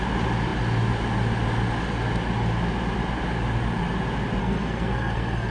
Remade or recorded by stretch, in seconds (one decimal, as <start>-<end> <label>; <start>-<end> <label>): 0.0-4.4 recorded; 4.4-5.5 remade